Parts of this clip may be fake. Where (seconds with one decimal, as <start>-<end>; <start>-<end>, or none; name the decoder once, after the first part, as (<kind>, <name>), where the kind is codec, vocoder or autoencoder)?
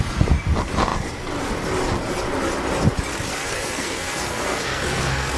3.3-5.4 (codec, SNAC)